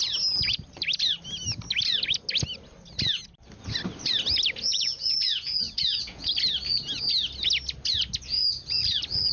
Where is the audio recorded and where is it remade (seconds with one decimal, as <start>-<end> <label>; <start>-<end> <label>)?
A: 0.0-4.7 recorded; 4.7-6.3 remade; 6.3-9.3 recorded